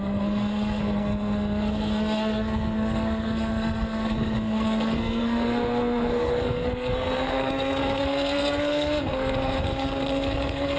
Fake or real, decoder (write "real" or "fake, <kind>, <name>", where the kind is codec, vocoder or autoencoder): fake, codec, SNAC